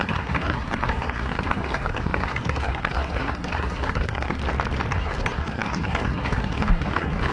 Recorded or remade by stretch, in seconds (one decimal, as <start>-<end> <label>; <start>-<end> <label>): 0.0-4.4 remade; 4.4-4.9 recorded; 4.9-7.3 remade